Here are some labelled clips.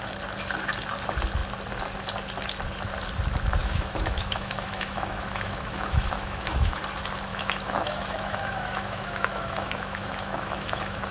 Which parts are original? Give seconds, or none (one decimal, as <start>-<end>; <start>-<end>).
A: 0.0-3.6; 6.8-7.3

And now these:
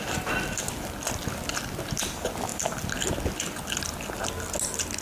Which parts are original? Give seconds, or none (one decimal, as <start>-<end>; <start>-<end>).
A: 0.0-5.0

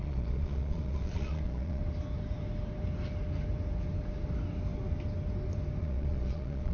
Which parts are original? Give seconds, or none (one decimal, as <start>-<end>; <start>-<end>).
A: 1.8-5.8